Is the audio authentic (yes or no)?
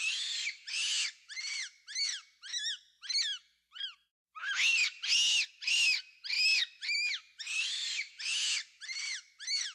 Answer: yes